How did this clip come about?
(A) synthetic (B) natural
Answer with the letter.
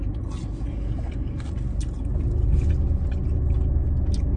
B